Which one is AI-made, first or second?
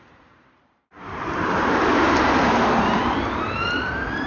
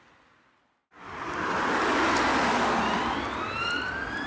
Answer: first